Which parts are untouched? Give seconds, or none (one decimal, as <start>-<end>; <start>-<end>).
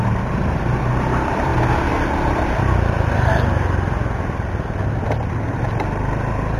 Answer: 1.5-5.4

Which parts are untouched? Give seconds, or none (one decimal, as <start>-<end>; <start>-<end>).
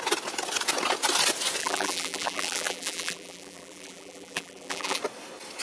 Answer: 0.0-1.6; 5.0-5.6